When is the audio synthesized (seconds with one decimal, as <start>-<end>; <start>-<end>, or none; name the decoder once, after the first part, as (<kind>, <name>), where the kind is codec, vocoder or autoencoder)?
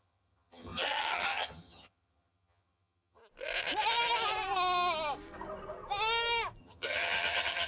0.0-3.2 (vocoder, HiFi-GAN); 6.6-7.7